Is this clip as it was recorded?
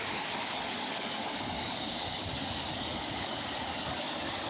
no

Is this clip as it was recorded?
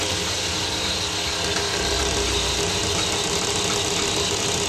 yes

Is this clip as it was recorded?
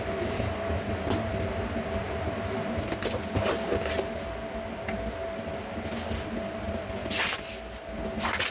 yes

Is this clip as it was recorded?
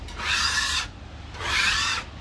yes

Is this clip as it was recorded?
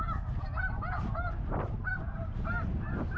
yes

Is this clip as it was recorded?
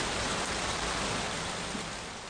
yes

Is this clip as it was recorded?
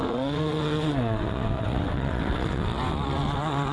no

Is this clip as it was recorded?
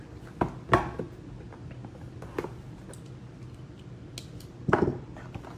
yes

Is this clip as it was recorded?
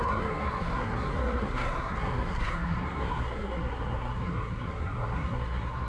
no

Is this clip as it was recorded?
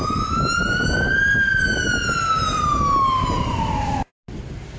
yes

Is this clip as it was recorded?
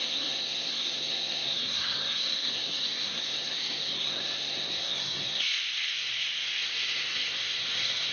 no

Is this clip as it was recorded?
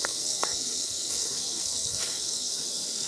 no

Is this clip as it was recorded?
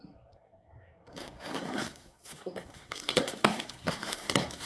no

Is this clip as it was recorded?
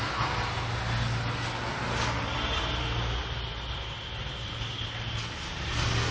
yes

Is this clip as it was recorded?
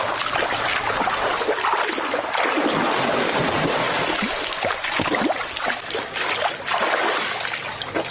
yes